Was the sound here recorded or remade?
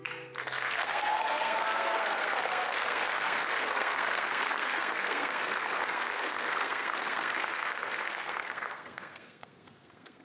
remade